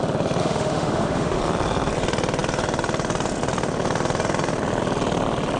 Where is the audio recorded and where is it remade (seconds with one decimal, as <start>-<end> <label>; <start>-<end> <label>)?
0.0-0.4 recorded; 0.4-1.4 remade; 1.4-5.6 recorded